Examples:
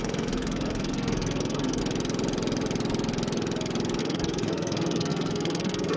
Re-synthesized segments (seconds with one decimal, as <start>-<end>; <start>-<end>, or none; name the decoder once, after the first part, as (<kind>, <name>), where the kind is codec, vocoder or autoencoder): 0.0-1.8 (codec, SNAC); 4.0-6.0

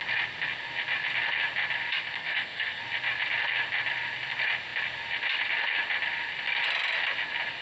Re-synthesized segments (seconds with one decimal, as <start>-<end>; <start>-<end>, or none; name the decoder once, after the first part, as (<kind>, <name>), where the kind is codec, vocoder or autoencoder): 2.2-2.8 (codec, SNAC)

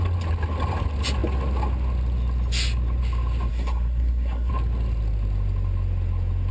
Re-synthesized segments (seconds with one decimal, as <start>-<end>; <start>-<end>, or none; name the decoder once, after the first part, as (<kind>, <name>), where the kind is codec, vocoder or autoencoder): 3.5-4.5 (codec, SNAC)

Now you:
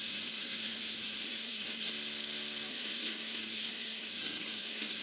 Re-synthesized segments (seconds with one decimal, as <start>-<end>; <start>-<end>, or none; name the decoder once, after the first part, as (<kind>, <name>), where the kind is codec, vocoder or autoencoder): 0.0-1.9 (codec, SNAC); 2.7-5.0